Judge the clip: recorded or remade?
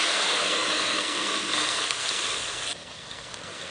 remade